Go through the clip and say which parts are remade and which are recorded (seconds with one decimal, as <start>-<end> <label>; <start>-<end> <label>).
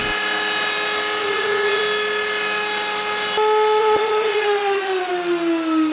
0.0-1.2 recorded; 1.2-1.8 remade; 1.8-3.8 recorded; 3.8-5.1 remade; 5.1-5.9 recorded